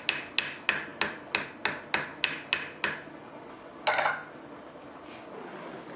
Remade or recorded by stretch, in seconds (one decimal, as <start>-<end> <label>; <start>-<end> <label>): 0.0-6.0 recorded